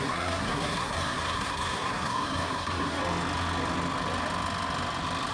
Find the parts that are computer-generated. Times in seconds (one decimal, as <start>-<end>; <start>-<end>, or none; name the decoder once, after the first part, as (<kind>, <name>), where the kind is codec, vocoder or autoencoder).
0.0-3.0 (codec, SNAC)